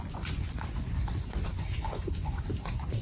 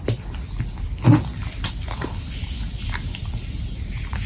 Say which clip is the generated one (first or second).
first